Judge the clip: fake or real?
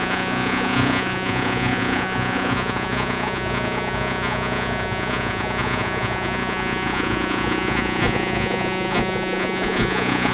fake